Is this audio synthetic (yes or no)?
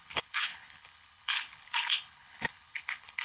yes